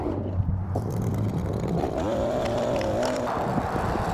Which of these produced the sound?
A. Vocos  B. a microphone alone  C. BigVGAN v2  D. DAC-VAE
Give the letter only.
B